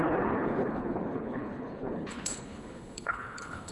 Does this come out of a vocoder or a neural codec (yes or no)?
yes